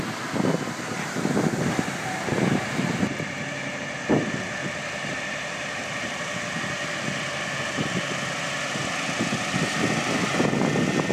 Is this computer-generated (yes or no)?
no